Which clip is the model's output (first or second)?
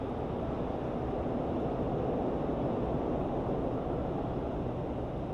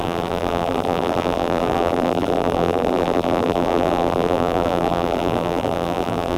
second